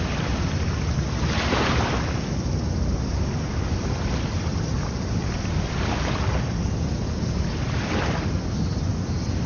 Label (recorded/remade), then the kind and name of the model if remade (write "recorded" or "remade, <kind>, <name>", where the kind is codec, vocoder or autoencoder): recorded